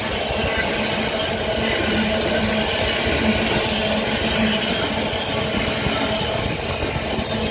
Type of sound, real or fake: real